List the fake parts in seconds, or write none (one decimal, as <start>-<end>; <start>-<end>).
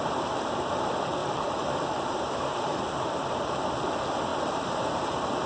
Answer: 1.2-2.7; 4.3-5.5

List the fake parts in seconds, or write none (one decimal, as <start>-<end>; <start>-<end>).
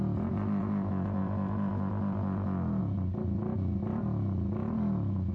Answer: none